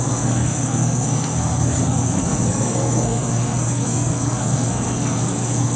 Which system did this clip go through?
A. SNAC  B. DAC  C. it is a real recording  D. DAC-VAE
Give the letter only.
A